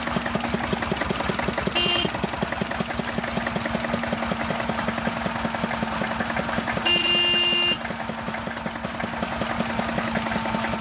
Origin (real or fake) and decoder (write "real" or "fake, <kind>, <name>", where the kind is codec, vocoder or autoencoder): real